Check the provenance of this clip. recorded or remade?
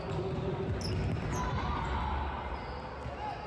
recorded